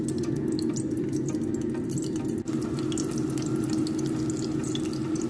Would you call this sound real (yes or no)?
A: yes